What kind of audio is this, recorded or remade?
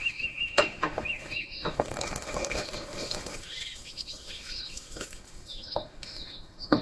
remade